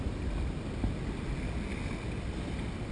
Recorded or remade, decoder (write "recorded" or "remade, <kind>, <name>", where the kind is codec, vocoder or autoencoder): recorded